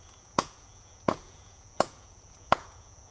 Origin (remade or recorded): remade